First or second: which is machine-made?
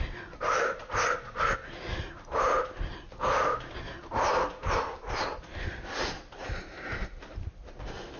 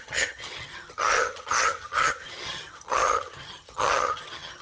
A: second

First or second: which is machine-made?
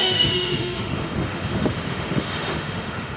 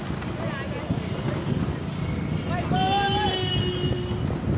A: first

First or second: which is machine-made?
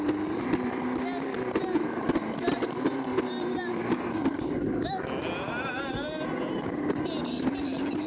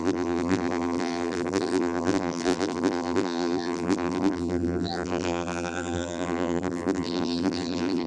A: second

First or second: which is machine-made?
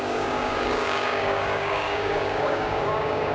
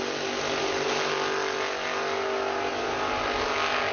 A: first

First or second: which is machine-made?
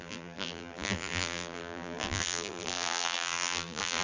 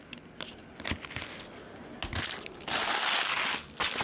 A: first